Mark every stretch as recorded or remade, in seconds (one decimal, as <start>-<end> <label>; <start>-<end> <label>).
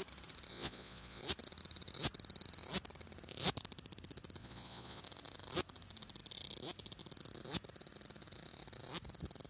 0.0-0.5 recorded; 0.5-1.2 remade; 1.2-4.4 recorded; 4.4-5.0 remade; 5.0-9.5 recorded